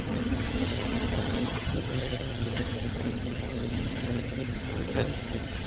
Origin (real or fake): fake